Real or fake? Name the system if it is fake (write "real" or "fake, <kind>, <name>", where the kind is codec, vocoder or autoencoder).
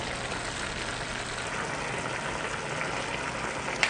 real